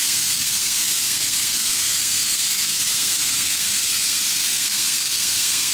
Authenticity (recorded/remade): remade